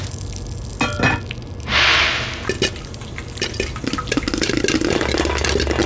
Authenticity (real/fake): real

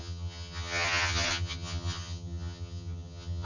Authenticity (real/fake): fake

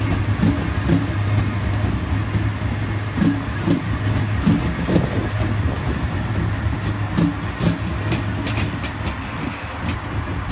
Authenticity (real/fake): real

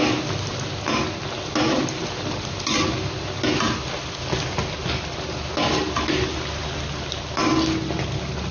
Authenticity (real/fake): real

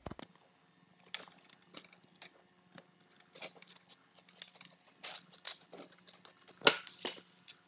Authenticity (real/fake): real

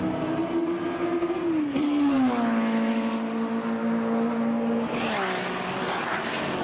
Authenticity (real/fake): real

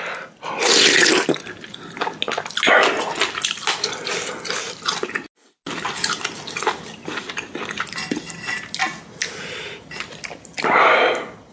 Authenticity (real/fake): real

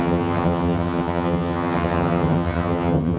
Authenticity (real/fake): fake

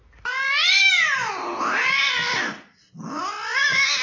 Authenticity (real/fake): real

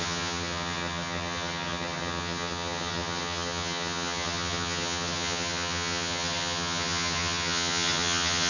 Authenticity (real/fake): fake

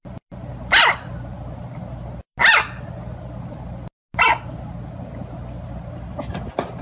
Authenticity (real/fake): real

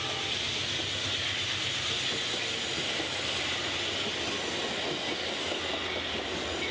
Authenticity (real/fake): real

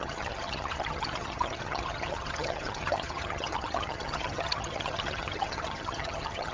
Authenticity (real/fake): fake